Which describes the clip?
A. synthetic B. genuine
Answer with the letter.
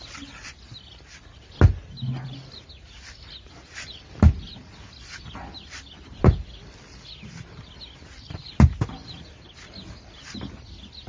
B